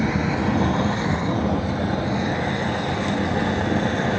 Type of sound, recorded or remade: recorded